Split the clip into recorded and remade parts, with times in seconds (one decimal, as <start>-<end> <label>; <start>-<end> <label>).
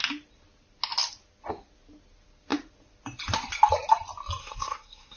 0.0-4.4 recorded; 4.4-5.2 remade